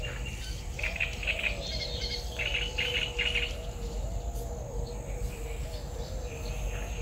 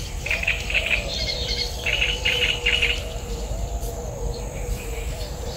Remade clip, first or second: second